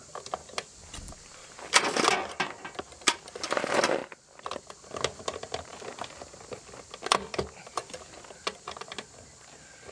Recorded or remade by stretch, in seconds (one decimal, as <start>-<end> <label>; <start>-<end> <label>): 0.0-9.9 recorded

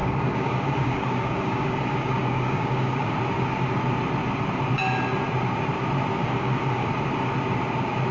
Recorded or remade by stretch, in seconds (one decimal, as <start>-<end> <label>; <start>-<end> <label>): 0.0-3.1 remade; 3.1-6.2 recorded; 6.2-6.9 remade; 6.9-8.1 recorded